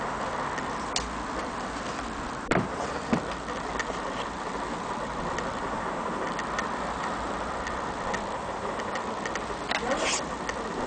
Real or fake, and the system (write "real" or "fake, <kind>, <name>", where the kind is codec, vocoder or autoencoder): real